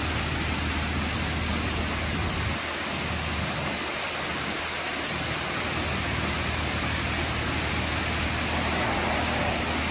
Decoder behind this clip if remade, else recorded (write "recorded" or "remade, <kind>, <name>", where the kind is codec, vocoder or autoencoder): recorded